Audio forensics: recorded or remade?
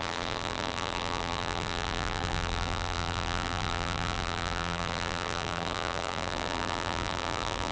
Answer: remade